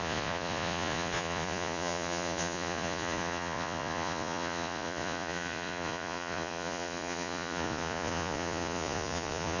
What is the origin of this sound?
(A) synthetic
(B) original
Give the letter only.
A